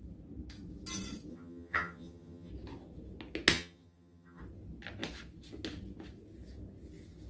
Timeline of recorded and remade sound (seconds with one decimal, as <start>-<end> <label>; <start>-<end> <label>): 0.0-1.3 recorded; 1.3-2.5 remade; 2.5-3.5 recorded; 3.5-4.4 remade; 4.4-7.3 recorded